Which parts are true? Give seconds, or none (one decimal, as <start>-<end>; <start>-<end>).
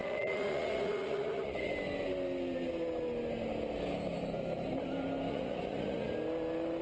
1.7-5.3; 6.1-6.8